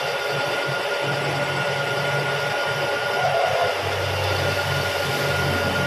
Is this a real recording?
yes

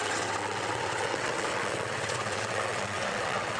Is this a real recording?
no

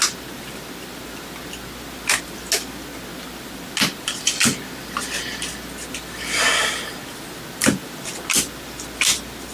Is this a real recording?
yes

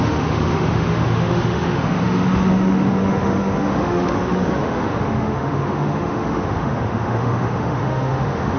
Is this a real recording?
no